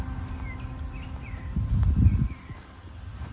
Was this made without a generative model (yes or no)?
yes